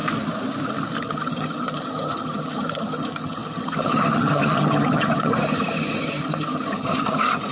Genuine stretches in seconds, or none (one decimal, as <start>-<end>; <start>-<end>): 0.0-1.0